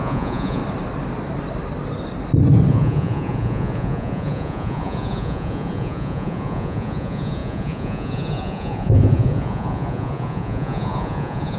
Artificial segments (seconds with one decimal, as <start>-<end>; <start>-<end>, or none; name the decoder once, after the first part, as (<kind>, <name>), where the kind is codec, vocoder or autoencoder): 0.0-0.6 (vocoder, Vocos); 2.7-11.6

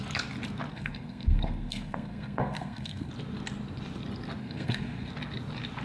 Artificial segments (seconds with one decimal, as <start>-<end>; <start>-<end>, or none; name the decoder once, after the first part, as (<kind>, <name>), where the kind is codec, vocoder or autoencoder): 0.7-3.1 (codec, SNAC); 4.4-5.1